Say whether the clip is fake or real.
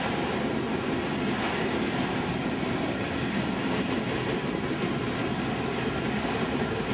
real